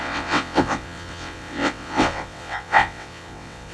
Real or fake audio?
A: fake